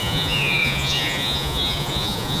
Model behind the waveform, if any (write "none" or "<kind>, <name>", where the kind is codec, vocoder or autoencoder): vocoder, Vocos